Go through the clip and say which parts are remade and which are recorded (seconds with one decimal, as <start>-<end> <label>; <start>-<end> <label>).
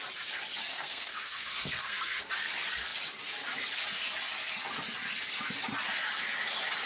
0.0-0.7 recorded; 0.7-2.3 remade; 2.3-6.9 recorded